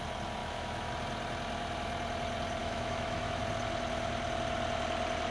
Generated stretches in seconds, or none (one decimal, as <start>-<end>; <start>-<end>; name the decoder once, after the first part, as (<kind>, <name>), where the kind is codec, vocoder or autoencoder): 0.4-0.9 (autoencoder, DAC-VAE); 2.6-3.4